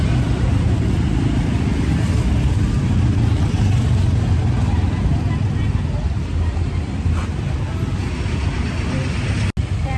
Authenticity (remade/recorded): recorded